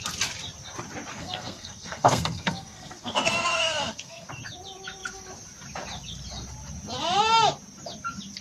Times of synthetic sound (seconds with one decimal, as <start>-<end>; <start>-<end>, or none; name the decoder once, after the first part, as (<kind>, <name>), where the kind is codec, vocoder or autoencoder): 1.1-4.3 (codec, SNAC)

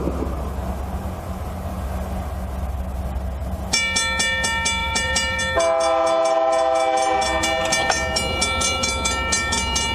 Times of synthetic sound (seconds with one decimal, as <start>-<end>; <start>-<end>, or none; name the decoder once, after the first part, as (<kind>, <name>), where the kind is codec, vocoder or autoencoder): 4.8-5.4 (vocoder, BigVGAN v2)

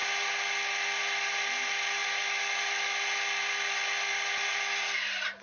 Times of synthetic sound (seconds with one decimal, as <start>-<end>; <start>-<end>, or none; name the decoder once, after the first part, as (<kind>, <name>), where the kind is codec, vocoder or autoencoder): none

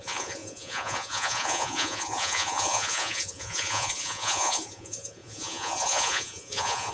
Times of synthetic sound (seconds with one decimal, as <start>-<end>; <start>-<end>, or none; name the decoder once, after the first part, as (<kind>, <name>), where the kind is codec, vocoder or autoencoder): 0.0-6.9 (vocoder, Vocos)

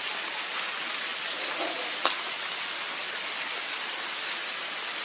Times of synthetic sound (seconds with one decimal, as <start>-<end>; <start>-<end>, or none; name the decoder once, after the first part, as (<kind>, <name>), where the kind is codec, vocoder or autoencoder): none

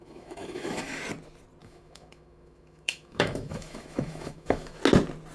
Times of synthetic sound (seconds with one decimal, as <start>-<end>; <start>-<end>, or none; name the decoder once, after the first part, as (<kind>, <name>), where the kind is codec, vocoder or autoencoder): 0.0-1.0 (autoencoder, DAC-VAE); 1.6-4.8

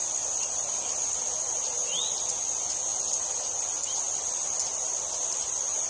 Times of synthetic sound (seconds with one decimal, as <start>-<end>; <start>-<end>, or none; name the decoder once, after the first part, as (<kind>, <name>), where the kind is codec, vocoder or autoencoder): none